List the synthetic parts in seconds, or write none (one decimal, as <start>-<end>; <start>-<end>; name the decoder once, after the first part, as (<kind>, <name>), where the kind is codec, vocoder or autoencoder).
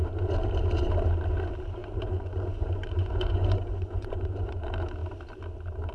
1.8-4.5 (vocoder, Vocos)